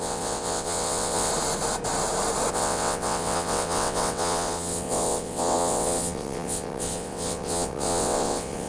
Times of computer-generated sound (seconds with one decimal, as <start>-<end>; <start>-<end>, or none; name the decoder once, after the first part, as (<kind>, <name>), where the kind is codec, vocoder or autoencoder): 0.0-1.3 (vocoder, WaveNeXt); 2.5-8.7

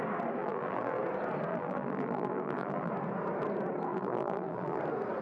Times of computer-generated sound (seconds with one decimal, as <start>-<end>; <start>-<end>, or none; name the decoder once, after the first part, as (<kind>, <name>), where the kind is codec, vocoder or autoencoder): 0.4-1.0 (vocoder, BigVGAN v2); 1.5-2.9; 3.9-4.8

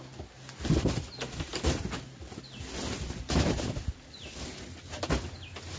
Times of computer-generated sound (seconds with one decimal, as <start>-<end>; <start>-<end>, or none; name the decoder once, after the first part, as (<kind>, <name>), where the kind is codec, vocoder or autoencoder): none

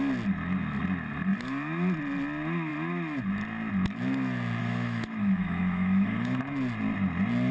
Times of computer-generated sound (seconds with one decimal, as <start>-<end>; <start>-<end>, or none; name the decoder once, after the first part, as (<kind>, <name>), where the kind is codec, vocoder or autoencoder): 4.6-6.4 (autoencoder, DAC-VAE)